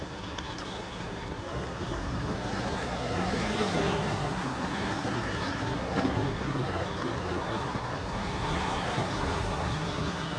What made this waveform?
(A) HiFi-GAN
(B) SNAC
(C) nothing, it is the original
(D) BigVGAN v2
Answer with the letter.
B